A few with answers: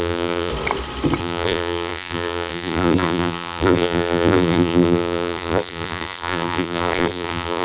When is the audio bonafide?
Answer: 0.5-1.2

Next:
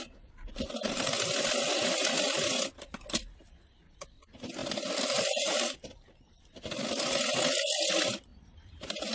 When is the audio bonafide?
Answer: 0.0-4.6; 6.7-8.3